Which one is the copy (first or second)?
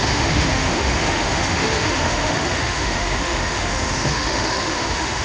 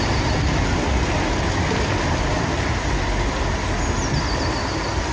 first